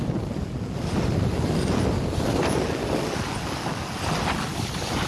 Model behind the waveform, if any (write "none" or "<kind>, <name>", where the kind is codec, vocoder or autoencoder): none